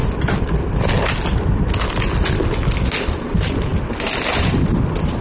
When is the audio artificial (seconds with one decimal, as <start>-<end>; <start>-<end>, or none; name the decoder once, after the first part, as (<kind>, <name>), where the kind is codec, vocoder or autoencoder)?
3.1-3.7 (vocoder, BigVGAN v2); 4.8-5.2